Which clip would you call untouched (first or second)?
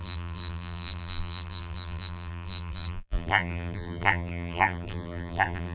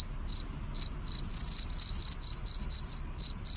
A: second